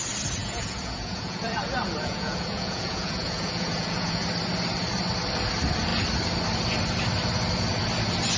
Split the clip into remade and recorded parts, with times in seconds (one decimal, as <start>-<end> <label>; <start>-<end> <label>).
0.0-0.4 recorded; 0.4-4.2 remade; 4.2-8.4 recorded